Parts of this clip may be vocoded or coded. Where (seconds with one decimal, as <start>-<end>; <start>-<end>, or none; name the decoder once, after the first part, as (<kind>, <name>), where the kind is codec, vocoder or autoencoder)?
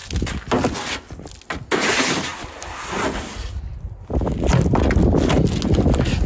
2.3-4.5 (vocoder, BigVGAN v2)